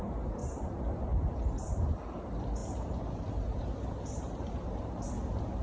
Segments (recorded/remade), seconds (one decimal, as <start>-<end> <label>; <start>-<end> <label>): 0.0-0.4 recorded; 0.4-1.0 remade; 1.0-2.6 recorded; 2.6-5.1 remade; 5.1-5.6 recorded